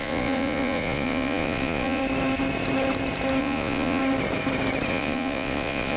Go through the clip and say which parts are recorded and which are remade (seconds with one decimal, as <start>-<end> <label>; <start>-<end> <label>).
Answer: 0.0-2.0 remade; 2.0-3.4 recorded; 3.4-4.0 remade; 4.0-4.9 recorded; 4.9-6.0 remade